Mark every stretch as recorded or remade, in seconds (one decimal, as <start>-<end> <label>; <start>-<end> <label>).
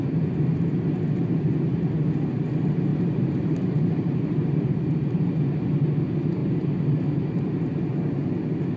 0.0-2.9 recorded; 2.9-4.8 remade; 4.8-8.8 recorded